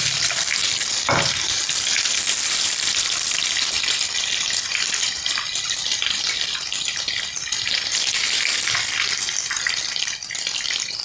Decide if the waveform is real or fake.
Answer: fake